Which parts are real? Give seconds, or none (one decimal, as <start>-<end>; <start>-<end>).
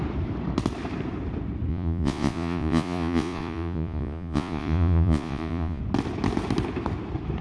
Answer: 0.0-1.7; 5.8-7.4